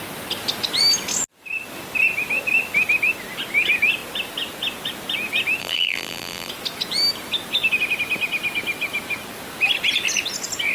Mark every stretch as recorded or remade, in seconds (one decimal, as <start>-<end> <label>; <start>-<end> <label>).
0.0-5.6 recorded; 5.6-6.5 remade; 6.5-10.7 recorded